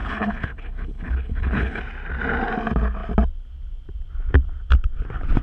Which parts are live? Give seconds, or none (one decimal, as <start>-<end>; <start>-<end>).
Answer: 1.8-5.4